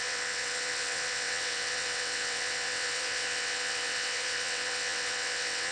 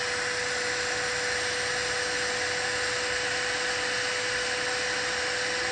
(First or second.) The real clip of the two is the second